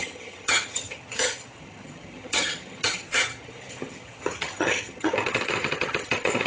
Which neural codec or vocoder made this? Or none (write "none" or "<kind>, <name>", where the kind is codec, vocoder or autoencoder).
vocoder, HiFi-GAN